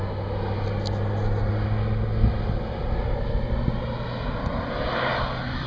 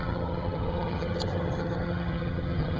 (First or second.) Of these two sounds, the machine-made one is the second